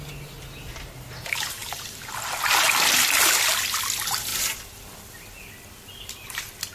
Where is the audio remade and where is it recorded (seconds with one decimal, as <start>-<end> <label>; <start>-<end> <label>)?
0.0-6.7 recorded